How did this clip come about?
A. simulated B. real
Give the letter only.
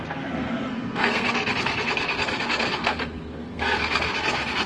A